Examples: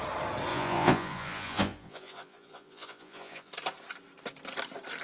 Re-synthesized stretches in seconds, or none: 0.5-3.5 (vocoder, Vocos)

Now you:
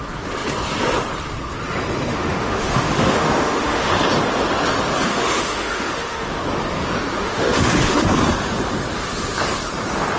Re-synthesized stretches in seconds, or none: 2.1-3.9 (autoencoder, DAC-VAE); 5.1-6.4; 7.2-8.1

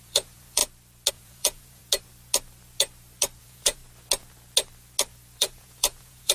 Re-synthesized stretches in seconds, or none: 0.0-0.6 (vocoder, Vocos); 1.1-1.8; 3.4-3.8; 5.4-6.3